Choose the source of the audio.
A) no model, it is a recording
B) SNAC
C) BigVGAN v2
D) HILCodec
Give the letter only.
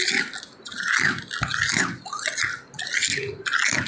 A